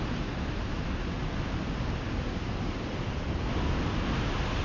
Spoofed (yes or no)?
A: no